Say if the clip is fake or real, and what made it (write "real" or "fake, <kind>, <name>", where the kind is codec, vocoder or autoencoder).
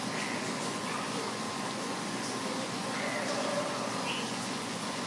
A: fake, vocoder, Vocos